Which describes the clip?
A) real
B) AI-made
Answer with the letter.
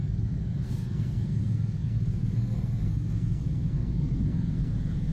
B